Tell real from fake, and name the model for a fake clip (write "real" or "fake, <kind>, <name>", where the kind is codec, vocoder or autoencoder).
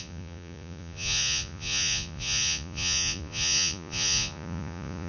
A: fake, vocoder, Vocos